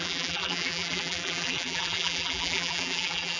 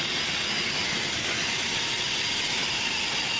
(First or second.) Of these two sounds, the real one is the second